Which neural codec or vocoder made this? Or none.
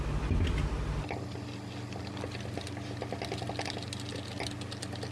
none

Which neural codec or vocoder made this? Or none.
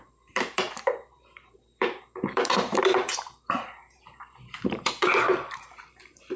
vocoder, BigVGAN v2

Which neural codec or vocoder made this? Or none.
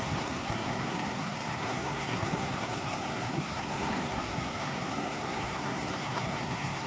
codec, SNAC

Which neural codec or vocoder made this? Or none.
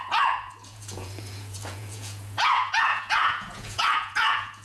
vocoder, Vocos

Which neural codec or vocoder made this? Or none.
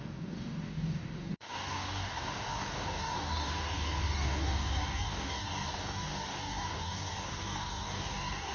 codec, DAC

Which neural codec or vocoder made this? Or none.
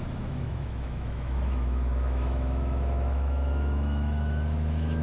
autoencoder, DAC-VAE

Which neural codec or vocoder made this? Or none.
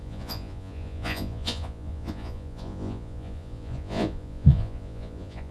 vocoder, Vocos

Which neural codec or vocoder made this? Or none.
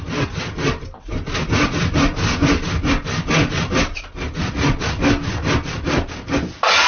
none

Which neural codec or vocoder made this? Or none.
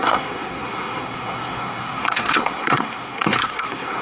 codec, SNAC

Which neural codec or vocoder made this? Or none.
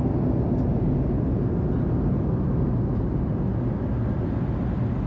none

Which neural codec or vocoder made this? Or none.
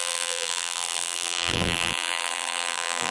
vocoder, BigVGAN v2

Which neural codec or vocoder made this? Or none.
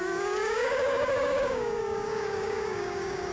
codec, DAC